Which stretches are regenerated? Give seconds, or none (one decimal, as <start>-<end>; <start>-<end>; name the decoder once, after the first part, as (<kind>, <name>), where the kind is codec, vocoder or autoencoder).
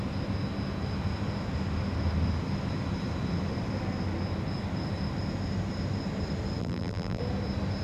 6.6-7.2 (vocoder, BigVGAN v2)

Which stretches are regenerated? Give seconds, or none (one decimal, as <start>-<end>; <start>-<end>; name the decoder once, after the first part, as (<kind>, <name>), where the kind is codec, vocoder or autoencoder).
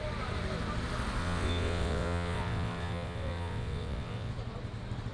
1.2-4.3 (vocoder, WaveNeXt)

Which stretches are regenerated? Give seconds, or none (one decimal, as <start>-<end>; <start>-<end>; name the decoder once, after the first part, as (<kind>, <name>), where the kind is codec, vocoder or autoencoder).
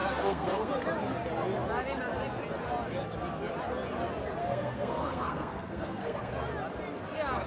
0.0-0.7 (codec, SNAC); 4.4-6.3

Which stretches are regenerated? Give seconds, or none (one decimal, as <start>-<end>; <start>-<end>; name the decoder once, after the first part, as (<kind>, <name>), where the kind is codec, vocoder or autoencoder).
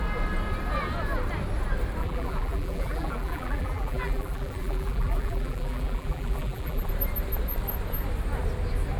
2.0-6.9 (vocoder, BigVGAN v2)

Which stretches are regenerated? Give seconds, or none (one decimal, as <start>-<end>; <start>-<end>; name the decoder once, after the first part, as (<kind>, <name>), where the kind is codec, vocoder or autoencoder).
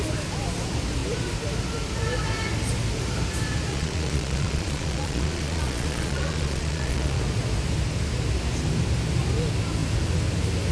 3.7-7.2 (vocoder, Vocos)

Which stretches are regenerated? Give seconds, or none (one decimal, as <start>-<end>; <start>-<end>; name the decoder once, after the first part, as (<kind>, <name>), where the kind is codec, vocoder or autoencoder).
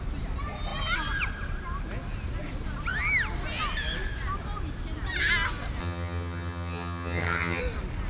5.8-7.6 (vocoder, HiFi-GAN)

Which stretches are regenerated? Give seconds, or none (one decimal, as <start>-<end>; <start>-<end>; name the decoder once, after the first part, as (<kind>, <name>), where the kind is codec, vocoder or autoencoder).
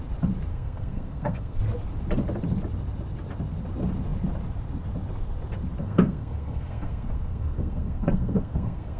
0.5-1.6 (codec, SNAC); 5.8-9.0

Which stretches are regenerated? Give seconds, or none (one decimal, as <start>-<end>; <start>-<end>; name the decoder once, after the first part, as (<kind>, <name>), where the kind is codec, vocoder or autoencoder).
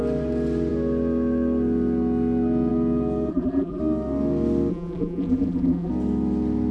3.3-3.8 (vocoder, BigVGAN v2); 4.7-5.9